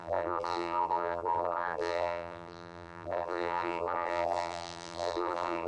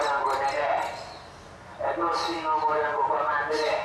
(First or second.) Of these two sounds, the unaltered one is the second